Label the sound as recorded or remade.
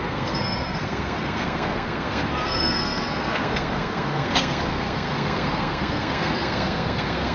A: remade